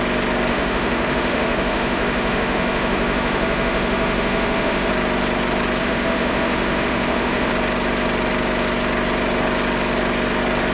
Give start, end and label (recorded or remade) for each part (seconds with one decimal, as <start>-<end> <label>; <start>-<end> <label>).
0.0-0.5 recorded; 0.5-4.9 remade; 4.9-5.8 recorded; 5.8-7.5 remade; 7.5-10.7 recorded